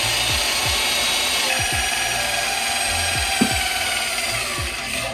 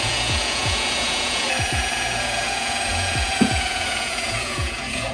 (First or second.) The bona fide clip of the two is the first